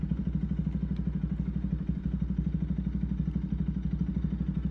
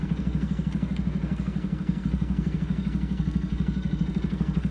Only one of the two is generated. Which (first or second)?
second